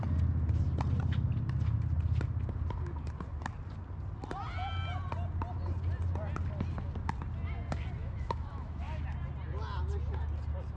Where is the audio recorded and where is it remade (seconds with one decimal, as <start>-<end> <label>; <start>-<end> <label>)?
0.0-8.0 recorded; 8.0-8.8 remade; 8.8-10.8 recorded